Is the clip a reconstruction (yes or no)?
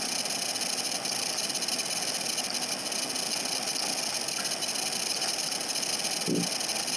no